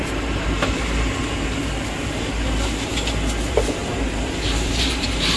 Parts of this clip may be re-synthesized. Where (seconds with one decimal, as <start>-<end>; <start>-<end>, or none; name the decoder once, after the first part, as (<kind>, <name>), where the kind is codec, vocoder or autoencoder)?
0.0-0.8 (vocoder, BigVGAN v2); 3.4-5.4